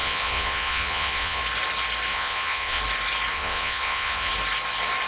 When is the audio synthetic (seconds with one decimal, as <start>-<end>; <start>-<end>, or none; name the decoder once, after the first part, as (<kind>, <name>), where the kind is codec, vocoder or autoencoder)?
0.0-1.4 (vocoder, Vocos); 2.1-2.8; 3.3-4.3